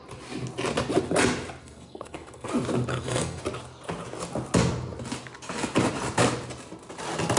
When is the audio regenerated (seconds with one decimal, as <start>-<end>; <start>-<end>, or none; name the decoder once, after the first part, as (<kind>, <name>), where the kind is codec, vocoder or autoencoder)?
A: 1.6-2.5 (codec, SNAC); 2.9-3.4